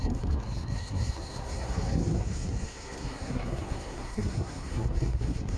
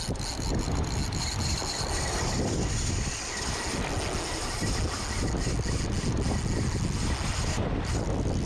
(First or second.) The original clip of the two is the second